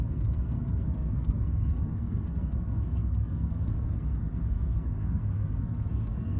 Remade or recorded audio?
remade